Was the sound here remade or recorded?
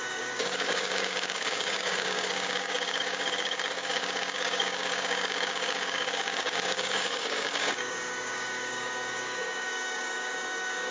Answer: remade